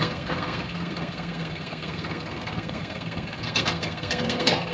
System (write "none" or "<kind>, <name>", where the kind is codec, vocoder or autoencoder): codec, SNAC